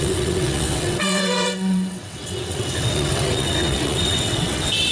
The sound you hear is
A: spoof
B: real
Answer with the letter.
A